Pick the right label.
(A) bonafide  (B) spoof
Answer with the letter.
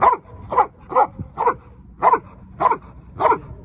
A